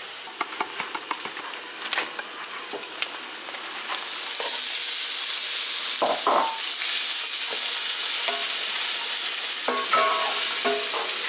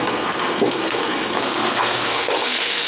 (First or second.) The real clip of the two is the first